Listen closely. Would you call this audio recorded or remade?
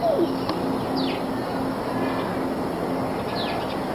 recorded